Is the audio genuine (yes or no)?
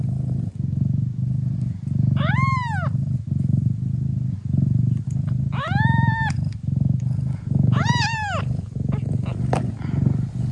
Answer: yes